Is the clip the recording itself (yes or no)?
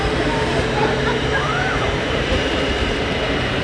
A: no